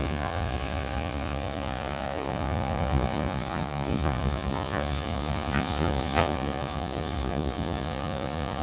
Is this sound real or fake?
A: fake